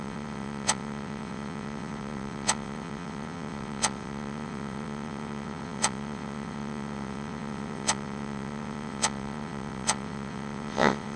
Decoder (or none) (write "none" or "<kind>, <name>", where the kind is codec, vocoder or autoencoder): vocoder, WaveNeXt